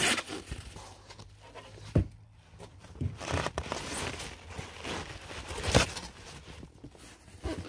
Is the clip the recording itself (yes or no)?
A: yes